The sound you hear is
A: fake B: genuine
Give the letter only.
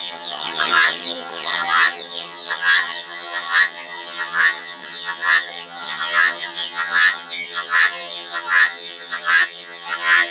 A